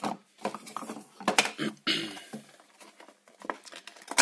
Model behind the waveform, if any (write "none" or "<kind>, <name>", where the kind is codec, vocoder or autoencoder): none